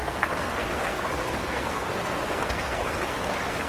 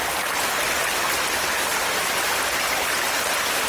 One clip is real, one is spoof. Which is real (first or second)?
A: second